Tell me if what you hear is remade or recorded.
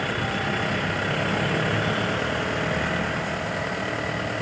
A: recorded